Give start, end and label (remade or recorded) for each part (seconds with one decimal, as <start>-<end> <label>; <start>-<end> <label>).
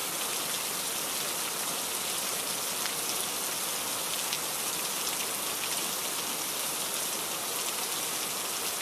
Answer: 0.0-8.8 recorded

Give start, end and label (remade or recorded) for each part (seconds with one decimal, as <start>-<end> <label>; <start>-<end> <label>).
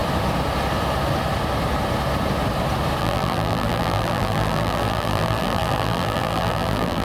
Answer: 0.0-3.0 recorded; 3.0-7.0 remade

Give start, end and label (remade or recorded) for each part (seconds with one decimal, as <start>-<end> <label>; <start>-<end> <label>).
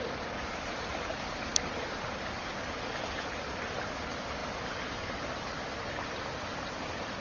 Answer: 0.0-0.4 recorded; 0.4-1.1 remade; 1.1-7.2 recorded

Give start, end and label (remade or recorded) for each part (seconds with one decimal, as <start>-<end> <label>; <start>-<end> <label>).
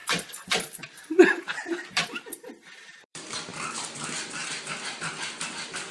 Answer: 0.0-3.5 remade; 3.5-4.5 recorded; 4.5-5.9 remade